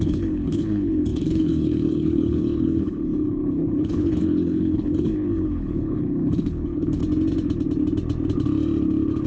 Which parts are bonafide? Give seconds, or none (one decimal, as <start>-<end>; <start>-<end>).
7.0-9.3